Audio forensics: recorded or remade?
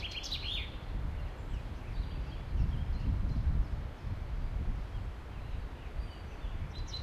recorded